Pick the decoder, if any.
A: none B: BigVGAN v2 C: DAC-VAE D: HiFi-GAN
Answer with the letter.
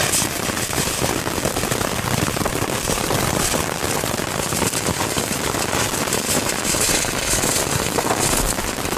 A